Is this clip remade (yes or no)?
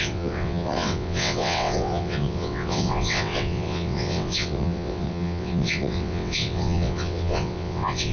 yes